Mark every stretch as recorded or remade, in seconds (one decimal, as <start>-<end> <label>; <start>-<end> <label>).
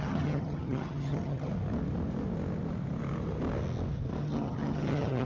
0.0-1.5 remade; 1.5-4.2 recorded; 4.2-5.2 remade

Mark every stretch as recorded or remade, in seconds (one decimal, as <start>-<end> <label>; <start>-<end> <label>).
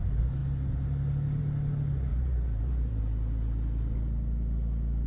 0.0-2.1 recorded; 2.1-3.0 remade; 3.0-5.1 recorded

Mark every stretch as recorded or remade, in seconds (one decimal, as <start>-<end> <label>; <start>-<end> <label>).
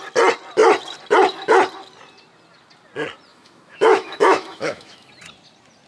0.0-3.3 recorded; 3.3-5.1 remade; 5.1-5.9 recorded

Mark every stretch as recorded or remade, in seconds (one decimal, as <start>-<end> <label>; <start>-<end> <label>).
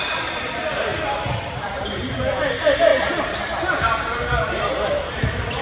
0.0-0.9 remade; 0.9-1.6 recorded; 1.6-5.6 remade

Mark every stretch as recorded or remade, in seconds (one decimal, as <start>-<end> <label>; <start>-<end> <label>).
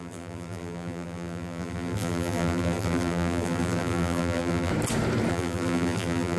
0.0-4.7 remade; 4.7-5.3 recorded; 5.3-6.4 remade